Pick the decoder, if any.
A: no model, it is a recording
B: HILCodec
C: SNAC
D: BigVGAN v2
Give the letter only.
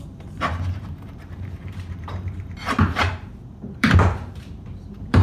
D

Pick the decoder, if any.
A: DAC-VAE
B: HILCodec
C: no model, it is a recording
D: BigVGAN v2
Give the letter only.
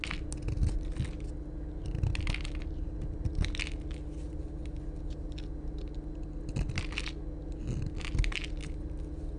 C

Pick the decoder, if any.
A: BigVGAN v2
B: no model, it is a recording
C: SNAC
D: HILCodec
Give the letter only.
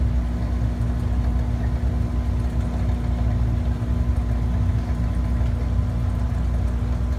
B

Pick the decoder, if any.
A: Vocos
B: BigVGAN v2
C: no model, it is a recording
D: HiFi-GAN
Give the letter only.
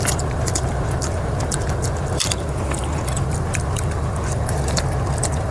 B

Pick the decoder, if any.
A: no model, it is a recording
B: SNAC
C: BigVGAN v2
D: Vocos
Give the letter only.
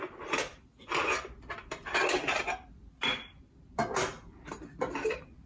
A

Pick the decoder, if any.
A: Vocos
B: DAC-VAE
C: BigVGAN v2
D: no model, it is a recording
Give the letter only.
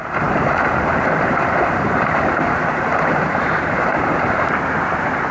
C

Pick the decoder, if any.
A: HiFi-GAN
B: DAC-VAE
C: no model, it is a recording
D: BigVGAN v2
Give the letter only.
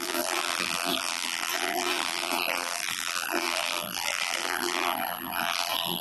D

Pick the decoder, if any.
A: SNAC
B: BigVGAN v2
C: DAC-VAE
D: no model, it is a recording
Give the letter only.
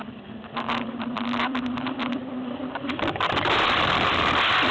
B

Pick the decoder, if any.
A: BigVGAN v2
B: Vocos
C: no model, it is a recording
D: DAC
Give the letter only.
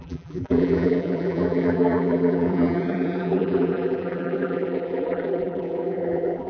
A